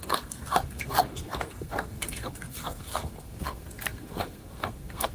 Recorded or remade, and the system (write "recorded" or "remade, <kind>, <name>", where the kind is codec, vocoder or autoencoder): remade, codec, SNAC